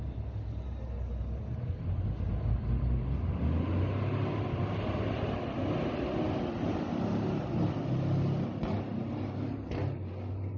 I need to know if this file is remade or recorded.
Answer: recorded